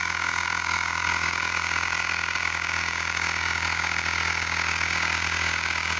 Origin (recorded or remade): remade